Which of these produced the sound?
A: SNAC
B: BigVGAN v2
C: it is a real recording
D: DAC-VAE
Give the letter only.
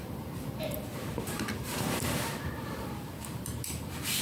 B